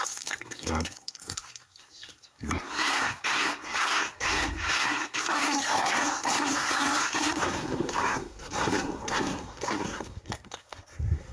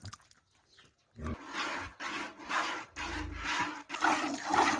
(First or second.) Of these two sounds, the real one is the second